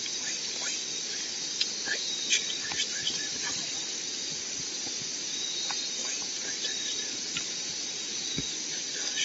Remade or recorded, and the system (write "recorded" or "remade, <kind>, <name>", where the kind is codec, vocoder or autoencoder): recorded